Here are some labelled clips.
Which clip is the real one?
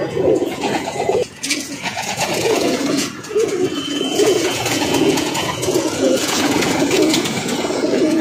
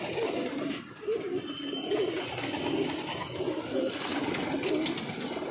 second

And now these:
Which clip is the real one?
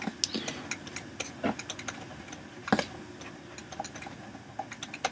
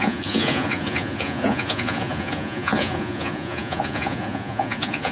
first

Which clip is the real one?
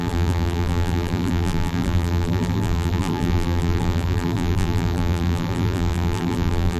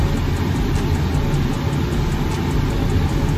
second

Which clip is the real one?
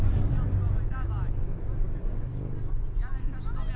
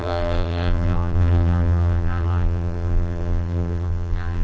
first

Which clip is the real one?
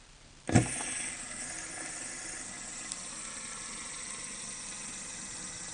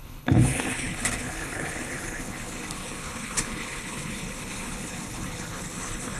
first